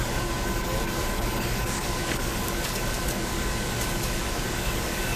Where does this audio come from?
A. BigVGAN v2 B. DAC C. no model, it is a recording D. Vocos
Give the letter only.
B